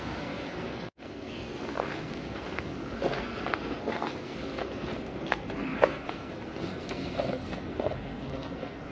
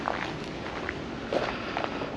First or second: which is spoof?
first